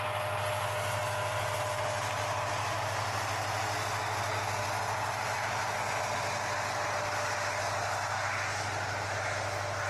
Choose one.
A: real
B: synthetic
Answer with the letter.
A